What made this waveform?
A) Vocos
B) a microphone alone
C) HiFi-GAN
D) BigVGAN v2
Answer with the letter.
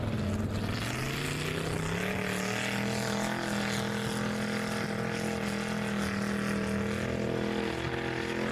B